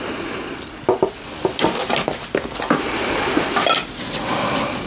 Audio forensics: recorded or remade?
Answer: recorded